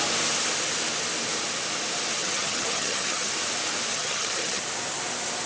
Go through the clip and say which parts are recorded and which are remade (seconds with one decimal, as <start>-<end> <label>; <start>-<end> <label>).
0.0-2.2 recorded; 2.2-3.3 remade; 3.3-3.9 recorded; 3.9-4.6 remade; 4.6-5.5 recorded